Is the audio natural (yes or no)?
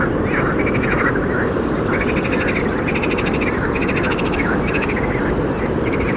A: yes